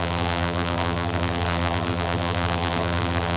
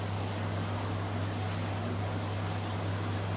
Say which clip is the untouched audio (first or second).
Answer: second